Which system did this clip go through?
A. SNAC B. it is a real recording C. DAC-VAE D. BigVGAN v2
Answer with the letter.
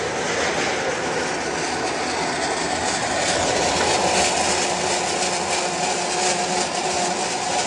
B